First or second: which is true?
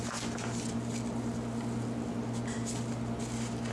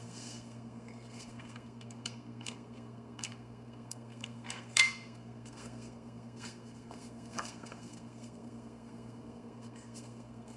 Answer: first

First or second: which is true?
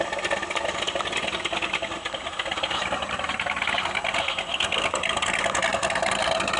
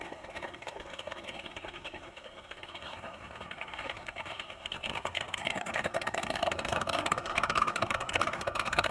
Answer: first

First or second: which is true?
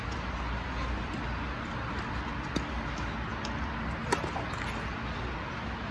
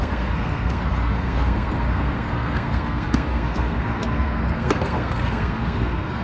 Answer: first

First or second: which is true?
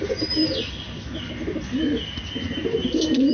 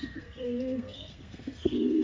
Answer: first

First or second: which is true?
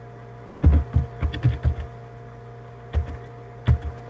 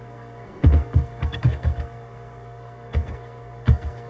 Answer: first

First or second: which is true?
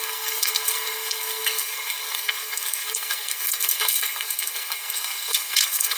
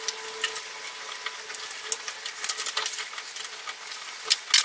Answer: second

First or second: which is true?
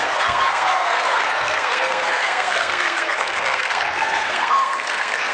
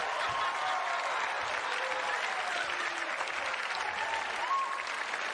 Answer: second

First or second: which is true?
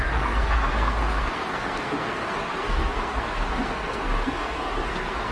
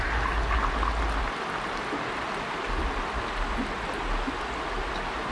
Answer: second